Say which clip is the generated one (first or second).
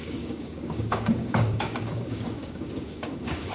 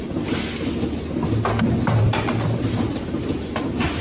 first